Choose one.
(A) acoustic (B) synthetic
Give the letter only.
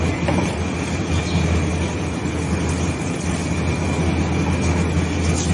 A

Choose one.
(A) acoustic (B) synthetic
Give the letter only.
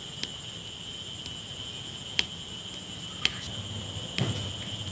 A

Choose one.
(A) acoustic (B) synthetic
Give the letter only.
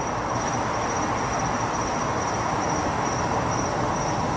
A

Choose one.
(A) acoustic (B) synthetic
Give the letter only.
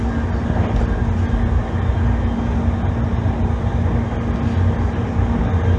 A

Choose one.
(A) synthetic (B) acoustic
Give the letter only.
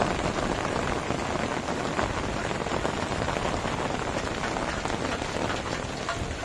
A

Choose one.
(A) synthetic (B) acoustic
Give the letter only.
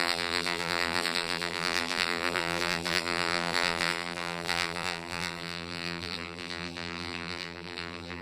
A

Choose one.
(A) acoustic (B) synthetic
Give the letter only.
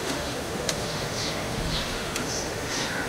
B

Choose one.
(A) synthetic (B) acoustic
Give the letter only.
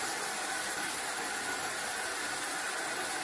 B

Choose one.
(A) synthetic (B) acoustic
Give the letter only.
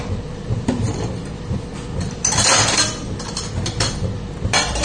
A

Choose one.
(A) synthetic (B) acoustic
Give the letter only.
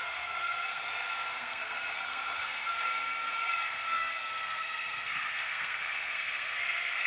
A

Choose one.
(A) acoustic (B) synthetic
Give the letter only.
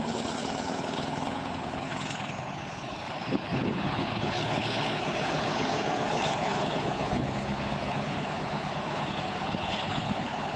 B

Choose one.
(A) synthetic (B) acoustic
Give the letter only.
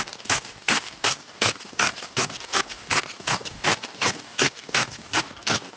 A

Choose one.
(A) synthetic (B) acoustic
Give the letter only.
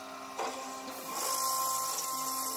B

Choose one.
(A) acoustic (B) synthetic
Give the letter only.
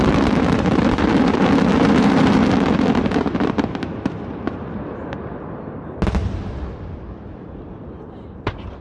A